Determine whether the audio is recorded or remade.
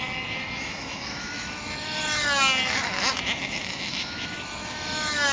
remade